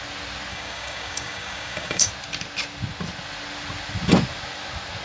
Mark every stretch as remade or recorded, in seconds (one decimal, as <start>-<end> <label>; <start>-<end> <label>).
0.0-0.5 recorded; 0.5-2.1 remade; 2.1-5.0 recorded